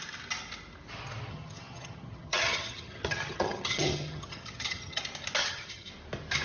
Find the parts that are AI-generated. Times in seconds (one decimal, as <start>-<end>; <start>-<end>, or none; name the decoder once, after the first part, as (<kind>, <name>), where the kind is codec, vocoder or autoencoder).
1.3-5.0 (vocoder, HiFi-GAN); 5.4-5.9